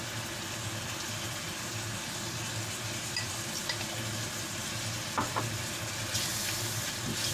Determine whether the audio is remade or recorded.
recorded